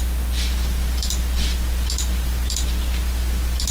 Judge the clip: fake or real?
real